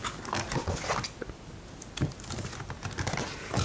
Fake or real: real